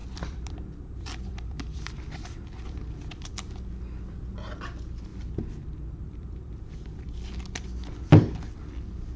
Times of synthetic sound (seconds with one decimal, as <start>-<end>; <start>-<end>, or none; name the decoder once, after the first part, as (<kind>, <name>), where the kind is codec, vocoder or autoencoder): 0.0-3.3 (vocoder, BigVGAN v2); 5.1-6.6